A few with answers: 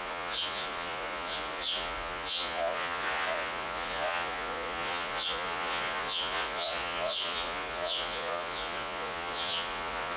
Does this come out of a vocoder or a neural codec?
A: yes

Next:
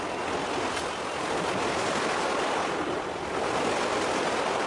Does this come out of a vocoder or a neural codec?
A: no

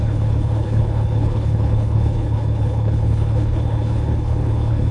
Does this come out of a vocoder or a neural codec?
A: yes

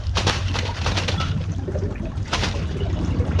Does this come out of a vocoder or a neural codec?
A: yes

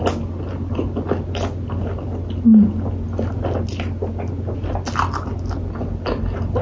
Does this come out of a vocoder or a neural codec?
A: no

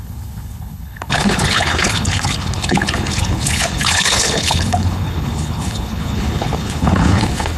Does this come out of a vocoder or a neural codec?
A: yes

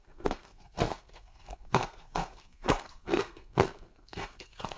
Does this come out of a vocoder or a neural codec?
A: yes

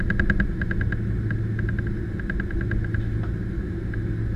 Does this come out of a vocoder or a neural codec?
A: no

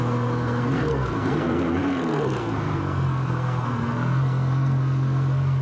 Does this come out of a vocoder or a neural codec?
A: yes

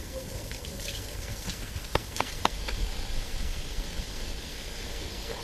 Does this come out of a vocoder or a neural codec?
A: yes